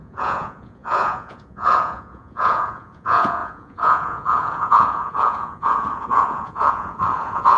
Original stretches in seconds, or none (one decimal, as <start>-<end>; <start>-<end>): none